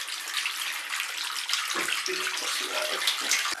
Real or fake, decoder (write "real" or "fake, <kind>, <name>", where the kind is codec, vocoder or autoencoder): real